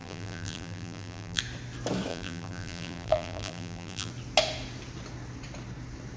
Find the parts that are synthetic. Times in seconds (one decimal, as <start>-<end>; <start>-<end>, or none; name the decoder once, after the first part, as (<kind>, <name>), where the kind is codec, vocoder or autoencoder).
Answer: 0.0-1.4 (vocoder, BigVGAN v2); 2.1-4.1